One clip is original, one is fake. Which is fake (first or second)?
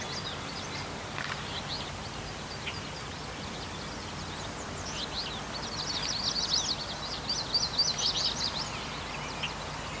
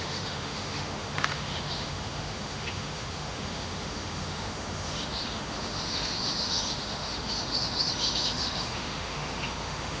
second